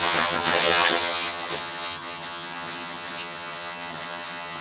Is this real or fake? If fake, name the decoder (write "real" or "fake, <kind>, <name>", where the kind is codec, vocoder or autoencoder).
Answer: fake, vocoder, HiFi-GAN